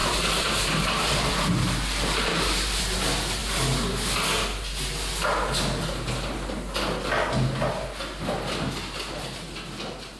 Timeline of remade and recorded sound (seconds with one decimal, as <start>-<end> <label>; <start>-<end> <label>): 0.0-1.3 remade; 1.3-2.3 recorded; 2.3-2.8 remade; 2.8-10.2 recorded